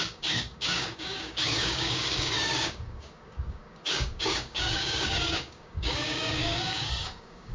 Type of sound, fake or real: fake